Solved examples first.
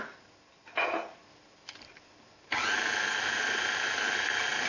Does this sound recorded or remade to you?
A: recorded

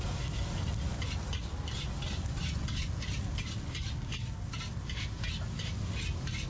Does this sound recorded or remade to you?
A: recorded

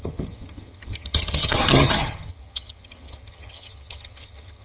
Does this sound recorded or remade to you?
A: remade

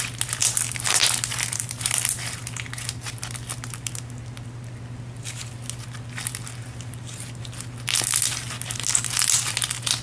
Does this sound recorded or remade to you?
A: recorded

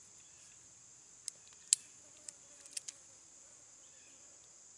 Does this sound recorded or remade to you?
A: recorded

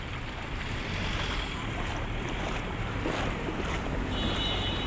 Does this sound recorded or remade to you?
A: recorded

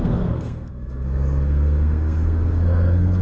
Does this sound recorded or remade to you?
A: remade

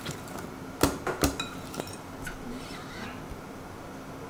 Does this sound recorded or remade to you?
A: recorded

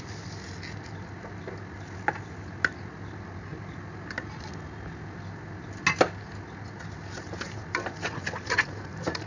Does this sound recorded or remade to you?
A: recorded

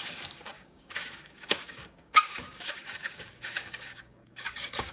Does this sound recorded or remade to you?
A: remade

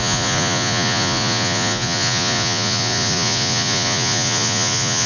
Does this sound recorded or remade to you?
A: remade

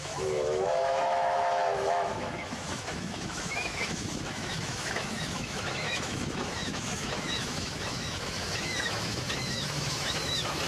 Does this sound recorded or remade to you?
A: remade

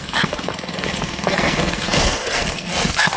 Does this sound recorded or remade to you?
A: remade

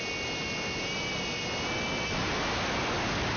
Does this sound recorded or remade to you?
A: recorded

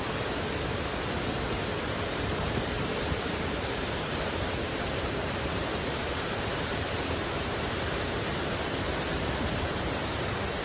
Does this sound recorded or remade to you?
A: remade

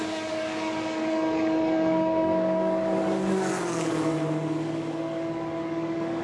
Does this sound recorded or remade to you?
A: remade